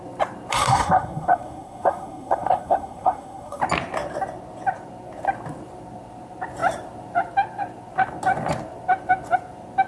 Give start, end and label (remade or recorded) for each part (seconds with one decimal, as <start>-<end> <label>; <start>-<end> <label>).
0.0-0.5 recorded; 0.5-3.6 remade; 3.6-9.9 recorded